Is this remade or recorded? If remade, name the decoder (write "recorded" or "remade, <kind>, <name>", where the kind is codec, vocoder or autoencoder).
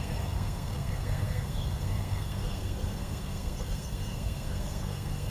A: remade, codec, SNAC